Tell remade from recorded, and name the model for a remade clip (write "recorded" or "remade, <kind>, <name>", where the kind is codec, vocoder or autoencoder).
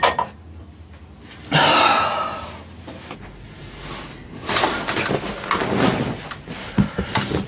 recorded